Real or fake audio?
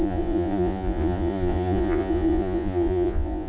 fake